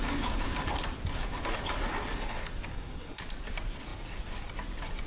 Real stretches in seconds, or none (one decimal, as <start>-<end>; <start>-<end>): 0.0-2.7; 3.2-5.1